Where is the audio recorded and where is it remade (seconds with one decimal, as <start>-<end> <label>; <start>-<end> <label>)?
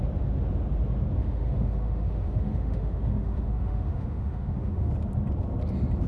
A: 0.0-1.2 recorded; 1.2-4.9 remade; 4.9-6.1 recorded